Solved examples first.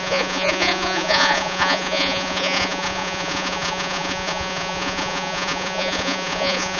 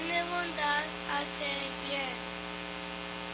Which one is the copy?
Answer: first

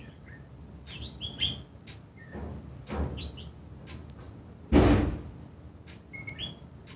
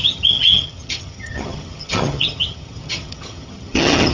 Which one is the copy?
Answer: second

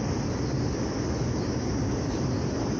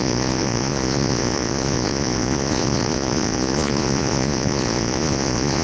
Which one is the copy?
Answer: second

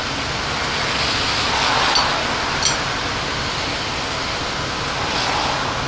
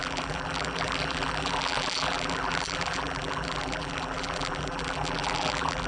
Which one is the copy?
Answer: second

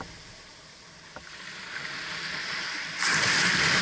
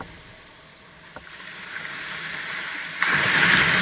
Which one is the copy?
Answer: first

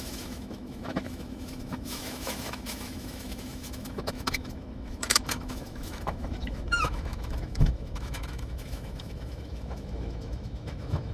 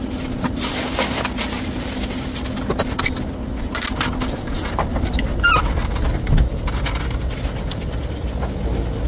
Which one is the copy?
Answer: first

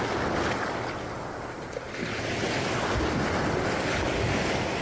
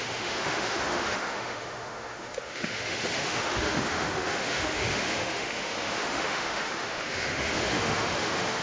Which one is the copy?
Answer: second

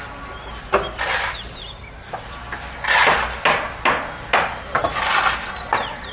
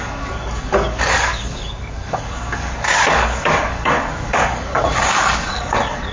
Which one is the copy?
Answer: second